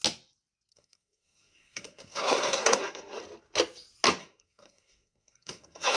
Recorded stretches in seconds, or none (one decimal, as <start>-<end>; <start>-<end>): 0.0-0.7; 3.2-4.2